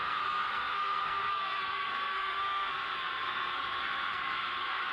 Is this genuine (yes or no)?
no